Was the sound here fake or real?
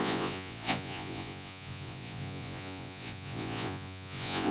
fake